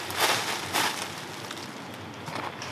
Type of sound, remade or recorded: recorded